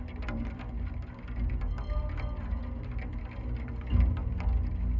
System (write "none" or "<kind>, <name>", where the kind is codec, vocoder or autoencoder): none